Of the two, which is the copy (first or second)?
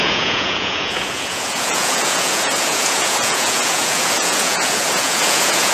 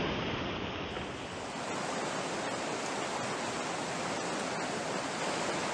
first